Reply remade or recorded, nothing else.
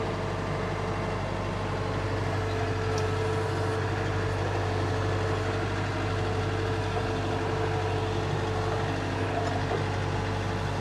recorded